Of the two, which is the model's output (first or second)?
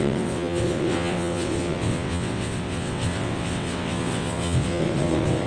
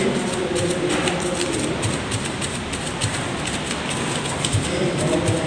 first